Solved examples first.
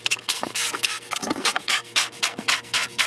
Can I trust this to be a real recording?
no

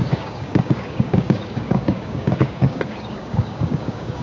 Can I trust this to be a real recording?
no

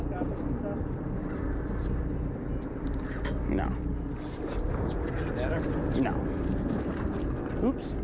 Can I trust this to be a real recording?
yes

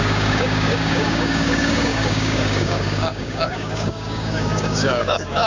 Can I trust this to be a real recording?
no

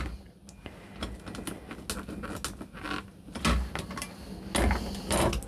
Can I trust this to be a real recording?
yes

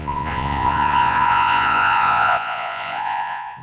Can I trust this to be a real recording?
no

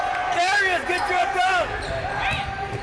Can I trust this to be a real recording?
no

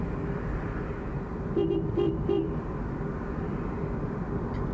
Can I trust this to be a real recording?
yes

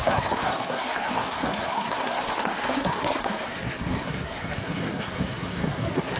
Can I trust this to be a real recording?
no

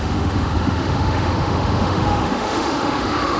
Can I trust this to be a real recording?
no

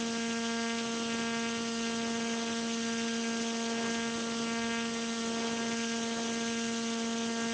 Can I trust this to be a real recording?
yes